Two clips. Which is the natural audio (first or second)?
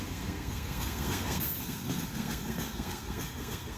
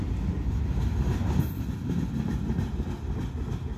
second